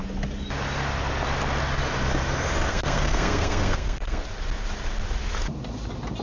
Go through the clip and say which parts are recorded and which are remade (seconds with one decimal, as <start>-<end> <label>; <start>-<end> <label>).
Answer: 0.0-2.7 recorded; 2.7-4.2 remade; 4.2-6.2 recorded